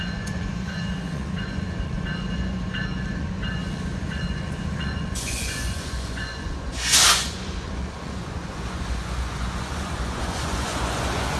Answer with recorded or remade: remade